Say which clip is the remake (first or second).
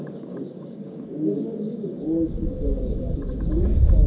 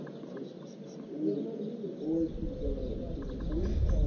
first